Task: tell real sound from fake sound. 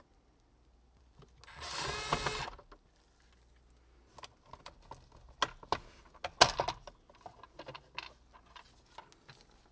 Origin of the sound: real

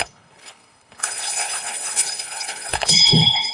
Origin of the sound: fake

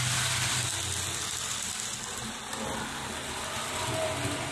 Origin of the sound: real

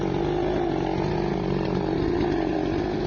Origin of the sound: real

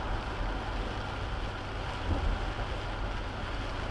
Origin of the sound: real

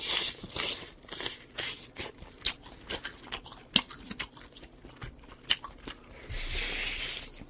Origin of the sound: real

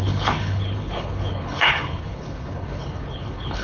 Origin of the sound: fake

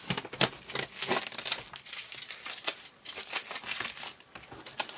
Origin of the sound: real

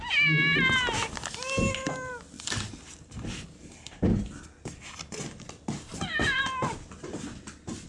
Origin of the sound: real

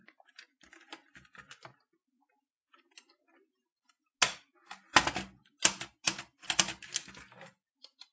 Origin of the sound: real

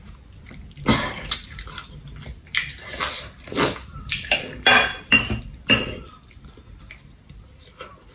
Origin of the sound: real